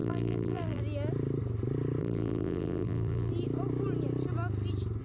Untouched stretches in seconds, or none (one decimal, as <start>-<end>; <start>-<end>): 0.8-2.0; 3.3-5.0